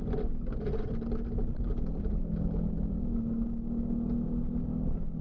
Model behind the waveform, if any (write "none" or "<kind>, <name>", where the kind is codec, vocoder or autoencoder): none